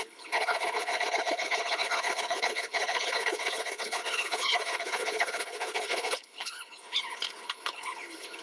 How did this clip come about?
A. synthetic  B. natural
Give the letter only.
A